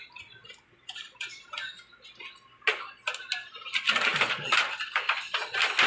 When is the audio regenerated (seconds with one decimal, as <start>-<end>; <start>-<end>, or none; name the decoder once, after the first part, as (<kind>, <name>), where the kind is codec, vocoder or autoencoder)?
none